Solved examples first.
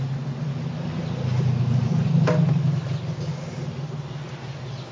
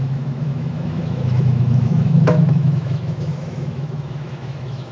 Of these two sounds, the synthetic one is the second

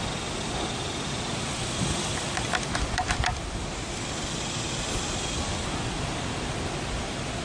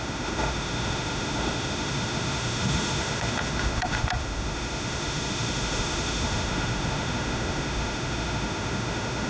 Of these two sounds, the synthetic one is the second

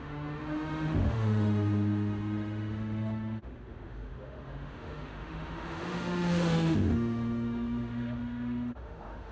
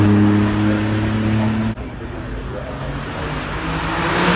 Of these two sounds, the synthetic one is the first